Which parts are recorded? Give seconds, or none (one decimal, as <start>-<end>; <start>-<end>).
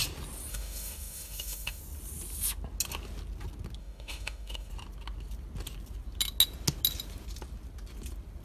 0.0-0.5; 1.8-3.8; 4.7-8.4